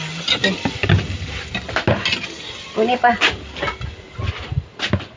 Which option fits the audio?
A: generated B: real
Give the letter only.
B